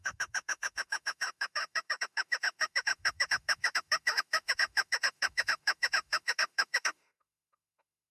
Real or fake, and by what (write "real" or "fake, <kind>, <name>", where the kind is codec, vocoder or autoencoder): fake, autoencoder, DAC-VAE